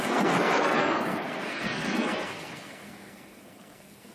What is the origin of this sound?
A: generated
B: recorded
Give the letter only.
A